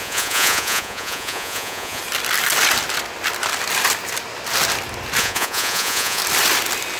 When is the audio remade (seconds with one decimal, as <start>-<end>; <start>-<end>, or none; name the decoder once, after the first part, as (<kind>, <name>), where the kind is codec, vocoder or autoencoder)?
0.0-2.0 (vocoder, Vocos); 5.2-6.2